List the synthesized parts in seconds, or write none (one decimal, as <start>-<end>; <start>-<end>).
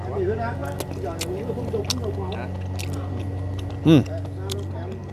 none